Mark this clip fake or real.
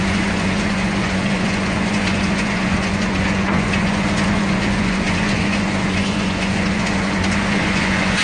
fake